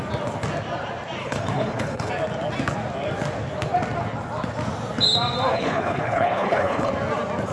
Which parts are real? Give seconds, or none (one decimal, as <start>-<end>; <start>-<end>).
0.0-1.2; 2.1-5.5; 6.9-7.5